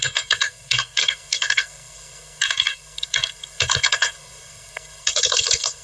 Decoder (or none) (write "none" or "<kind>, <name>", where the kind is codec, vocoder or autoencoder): codec, SNAC